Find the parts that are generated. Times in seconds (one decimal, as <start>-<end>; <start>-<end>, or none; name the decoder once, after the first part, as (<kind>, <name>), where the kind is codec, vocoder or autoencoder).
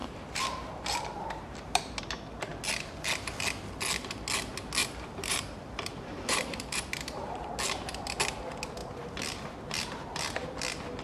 0.0-2.0 (vocoder, BigVGAN v2); 4.8-7.5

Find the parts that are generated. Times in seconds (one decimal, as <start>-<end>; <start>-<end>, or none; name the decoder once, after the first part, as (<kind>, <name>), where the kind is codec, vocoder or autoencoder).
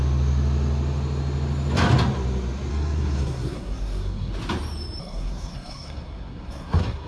2.7-4.3 (codec, SNAC); 5.0-7.1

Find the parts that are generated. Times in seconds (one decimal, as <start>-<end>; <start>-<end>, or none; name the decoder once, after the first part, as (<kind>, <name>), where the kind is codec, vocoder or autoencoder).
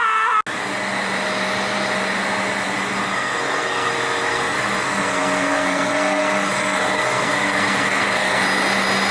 3.0-3.9 (codec, SNAC); 4.3-8.4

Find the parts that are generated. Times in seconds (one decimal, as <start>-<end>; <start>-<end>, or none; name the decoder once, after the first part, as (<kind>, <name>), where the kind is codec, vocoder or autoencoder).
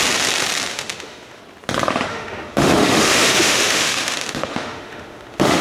0.7-1.4 (autoencoder, DAC-VAE); 2.1-5.6